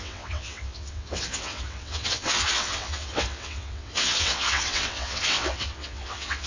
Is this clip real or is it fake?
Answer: fake